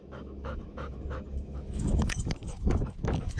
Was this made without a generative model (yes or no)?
no